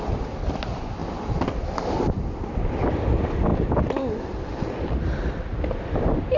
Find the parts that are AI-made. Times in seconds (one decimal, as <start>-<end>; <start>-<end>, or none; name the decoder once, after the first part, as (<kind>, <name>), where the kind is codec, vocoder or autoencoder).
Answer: none